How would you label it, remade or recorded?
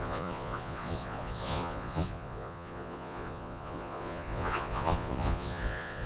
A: remade